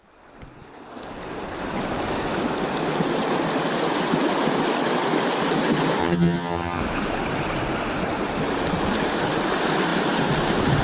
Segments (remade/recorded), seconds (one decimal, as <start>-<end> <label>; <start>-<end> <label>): 0.0-6.0 recorded; 6.0-6.8 remade; 6.8-10.8 recorded